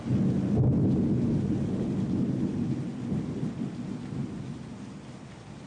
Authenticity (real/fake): real